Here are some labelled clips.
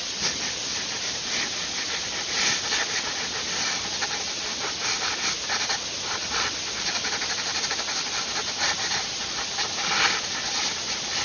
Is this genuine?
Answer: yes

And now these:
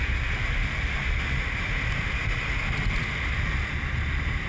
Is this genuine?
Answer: yes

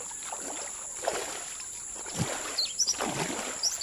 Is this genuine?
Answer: yes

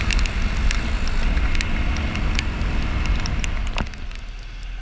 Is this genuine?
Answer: yes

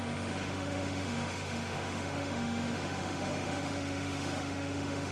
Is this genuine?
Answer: no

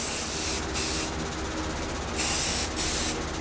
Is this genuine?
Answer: yes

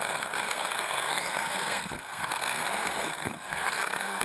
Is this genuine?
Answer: no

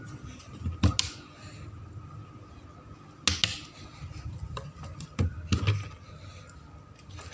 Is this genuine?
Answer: yes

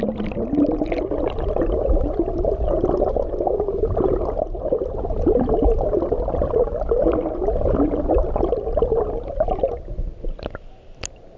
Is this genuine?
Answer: yes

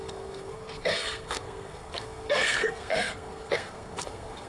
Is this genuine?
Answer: no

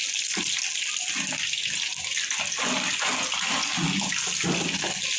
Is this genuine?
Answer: yes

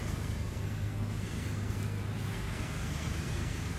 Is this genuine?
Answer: no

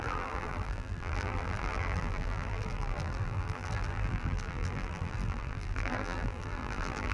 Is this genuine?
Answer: no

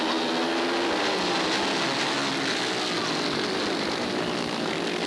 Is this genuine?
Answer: yes